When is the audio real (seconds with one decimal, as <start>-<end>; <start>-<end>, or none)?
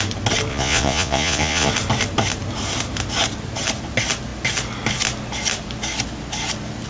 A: 0.0-0.5; 1.7-6.9